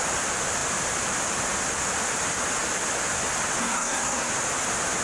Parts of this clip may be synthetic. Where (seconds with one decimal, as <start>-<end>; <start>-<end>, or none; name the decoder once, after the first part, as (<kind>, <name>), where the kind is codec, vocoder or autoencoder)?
3.6-4.3 (codec, SNAC)